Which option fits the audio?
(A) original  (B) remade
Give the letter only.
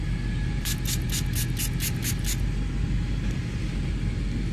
A